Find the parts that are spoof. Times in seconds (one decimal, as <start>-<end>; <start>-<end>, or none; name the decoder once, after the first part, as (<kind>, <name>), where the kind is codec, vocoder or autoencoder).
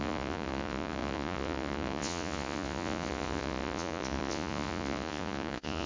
0.0-5.9 (vocoder, Vocos)